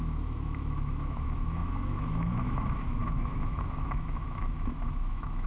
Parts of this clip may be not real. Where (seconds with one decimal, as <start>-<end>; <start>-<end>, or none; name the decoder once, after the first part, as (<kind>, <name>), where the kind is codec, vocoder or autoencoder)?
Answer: 0.0-5.5 (autoencoder, DAC-VAE)